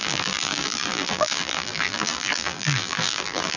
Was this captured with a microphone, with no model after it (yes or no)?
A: no